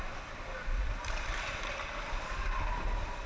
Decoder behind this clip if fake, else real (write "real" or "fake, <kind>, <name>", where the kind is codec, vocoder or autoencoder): real